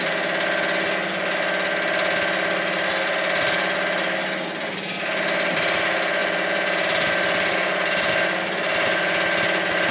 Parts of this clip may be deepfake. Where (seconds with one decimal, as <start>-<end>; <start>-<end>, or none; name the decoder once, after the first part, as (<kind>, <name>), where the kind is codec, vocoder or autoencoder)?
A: 6.2-8.1 (vocoder, BigVGAN v2)